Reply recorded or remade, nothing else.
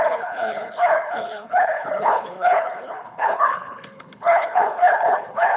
remade